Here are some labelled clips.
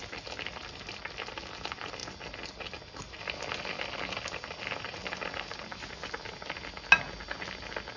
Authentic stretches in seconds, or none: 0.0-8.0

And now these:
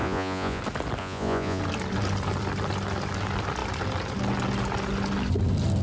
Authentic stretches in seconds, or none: 0.6-1.0; 1.6-5.8

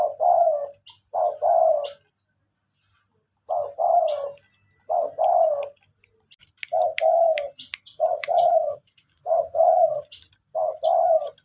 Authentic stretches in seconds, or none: 0.0-7.9; 10.3-11.4

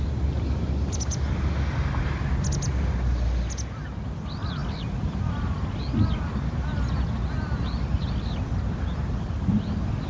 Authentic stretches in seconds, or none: 0.0-10.1

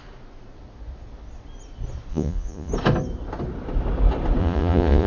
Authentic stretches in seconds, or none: 0.0-2.1; 2.7-4.4